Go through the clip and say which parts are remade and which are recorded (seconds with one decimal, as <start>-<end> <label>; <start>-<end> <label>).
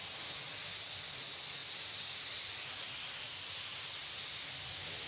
0.0-1.6 recorded; 1.6-3.2 remade; 3.2-5.1 recorded